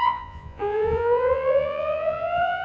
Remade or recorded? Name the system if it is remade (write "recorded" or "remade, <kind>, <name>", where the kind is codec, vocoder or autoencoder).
remade, vocoder, Vocos